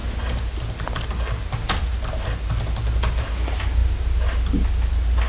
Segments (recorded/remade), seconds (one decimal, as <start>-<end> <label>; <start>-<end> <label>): 0.0-5.3 recorded